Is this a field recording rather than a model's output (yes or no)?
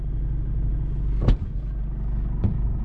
yes